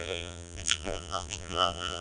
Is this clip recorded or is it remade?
remade